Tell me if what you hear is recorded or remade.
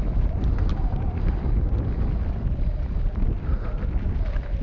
recorded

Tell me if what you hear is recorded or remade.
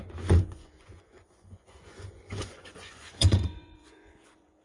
remade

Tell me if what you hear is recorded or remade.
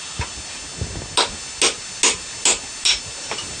recorded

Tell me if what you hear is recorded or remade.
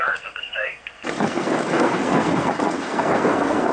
remade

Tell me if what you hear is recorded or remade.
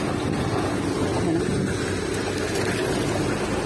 recorded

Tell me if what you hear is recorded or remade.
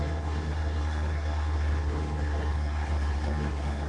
remade